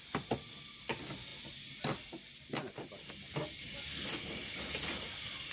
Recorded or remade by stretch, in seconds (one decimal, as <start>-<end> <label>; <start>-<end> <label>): 0.0-5.5 recorded